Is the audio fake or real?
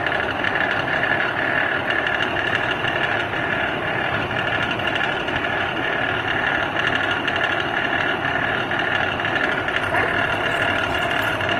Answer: real